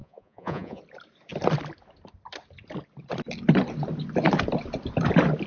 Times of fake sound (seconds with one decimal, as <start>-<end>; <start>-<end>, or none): 0.0-0.8